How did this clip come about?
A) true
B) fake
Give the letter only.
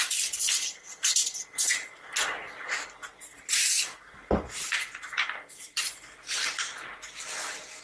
A